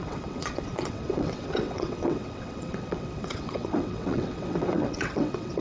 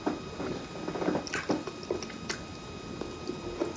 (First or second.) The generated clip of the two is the first